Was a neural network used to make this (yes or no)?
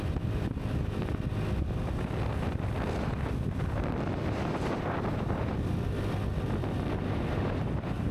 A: no